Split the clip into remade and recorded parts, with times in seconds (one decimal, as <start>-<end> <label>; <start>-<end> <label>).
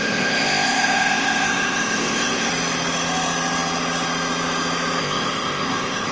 0.0-2.5 remade; 2.5-5.0 recorded; 5.0-6.1 remade